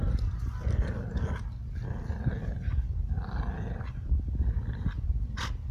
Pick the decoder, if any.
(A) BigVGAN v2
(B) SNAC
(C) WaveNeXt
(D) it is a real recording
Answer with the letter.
D